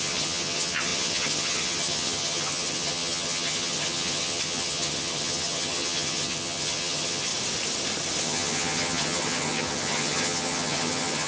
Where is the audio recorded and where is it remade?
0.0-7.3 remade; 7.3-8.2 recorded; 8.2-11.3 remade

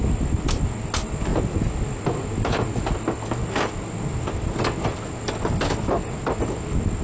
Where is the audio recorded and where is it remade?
0.0-7.0 recorded

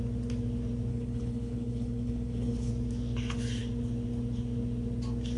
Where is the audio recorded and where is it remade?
0.0-0.9 recorded; 0.9-2.7 remade; 2.7-5.4 recorded